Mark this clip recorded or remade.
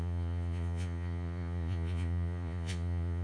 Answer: remade